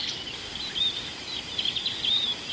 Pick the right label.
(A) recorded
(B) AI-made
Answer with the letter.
B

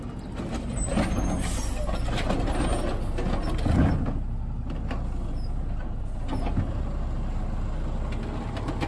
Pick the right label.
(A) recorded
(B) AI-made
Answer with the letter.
A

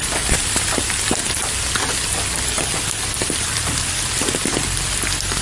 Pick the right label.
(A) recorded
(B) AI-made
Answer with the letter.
A